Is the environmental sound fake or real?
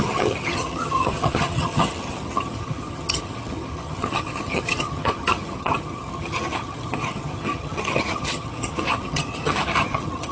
fake